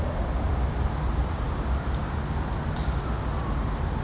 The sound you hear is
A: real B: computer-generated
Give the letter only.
A